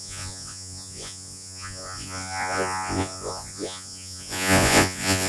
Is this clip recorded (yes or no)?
no